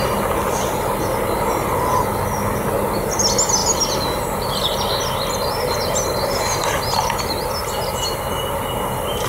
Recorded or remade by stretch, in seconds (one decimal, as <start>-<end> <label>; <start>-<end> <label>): 0.0-9.3 recorded